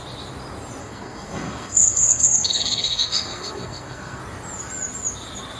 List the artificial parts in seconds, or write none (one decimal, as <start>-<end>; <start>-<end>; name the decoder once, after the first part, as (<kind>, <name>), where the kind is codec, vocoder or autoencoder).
0.8-4.2 (codec, SNAC)